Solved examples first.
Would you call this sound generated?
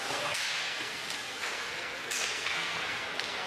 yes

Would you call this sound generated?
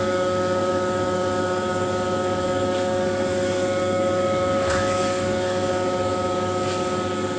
yes